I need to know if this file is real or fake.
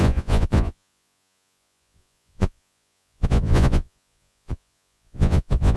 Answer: fake